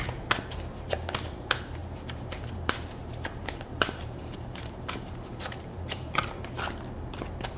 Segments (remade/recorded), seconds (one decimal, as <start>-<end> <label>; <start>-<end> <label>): 0.0-1.8 recorded; 1.8-6.4 remade; 6.4-7.6 recorded